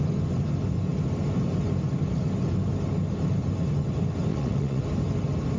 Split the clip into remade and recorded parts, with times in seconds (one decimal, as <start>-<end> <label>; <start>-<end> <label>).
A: 0.0-4.3 recorded; 4.3-4.8 remade; 4.8-5.6 recorded